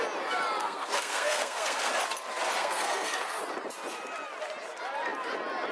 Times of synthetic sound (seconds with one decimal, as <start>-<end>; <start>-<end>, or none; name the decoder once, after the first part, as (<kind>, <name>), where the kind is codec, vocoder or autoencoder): 0.6-1.9 (codec, SNAC); 2.6-3.4